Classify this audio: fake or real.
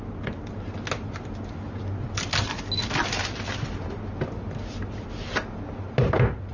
real